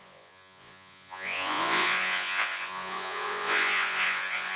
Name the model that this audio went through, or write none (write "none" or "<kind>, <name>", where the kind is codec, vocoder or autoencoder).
vocoder, Vocos